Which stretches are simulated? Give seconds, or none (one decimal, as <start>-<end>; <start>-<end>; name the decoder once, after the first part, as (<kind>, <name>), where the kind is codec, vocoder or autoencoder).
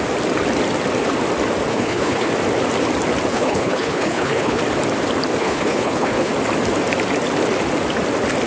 1.7-2.3 (codec, HILCodec); 3.3-4.6; 5.4-6.3